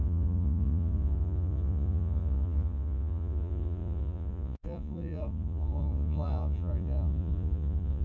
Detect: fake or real fake